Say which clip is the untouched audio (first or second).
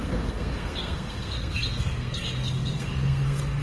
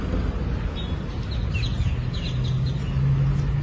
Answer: second